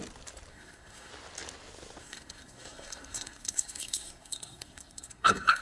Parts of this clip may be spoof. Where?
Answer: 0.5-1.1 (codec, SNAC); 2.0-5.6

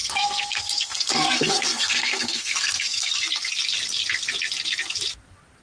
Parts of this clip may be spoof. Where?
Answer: 0.0-3.1 (codec, SNAC)

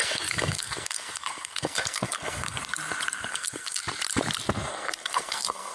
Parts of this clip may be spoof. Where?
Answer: 0.0-2.6 (codec, SNAC); 3.3-3.8; 4.7-5.7

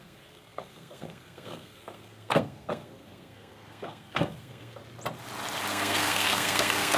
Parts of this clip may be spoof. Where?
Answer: 0.0-4.8 (codec, SNAC); 5.7-7.0

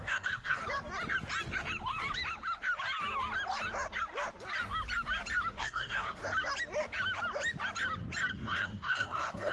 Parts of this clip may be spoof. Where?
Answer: 0.0-0.6 (codec, SNAC); 5.6-6.2; 8.3-9.5